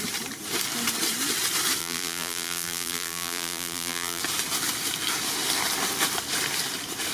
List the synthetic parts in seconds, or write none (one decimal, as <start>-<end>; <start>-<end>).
1.8-4.2